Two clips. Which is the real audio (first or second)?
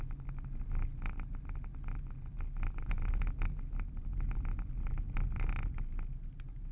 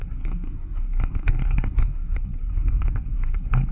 first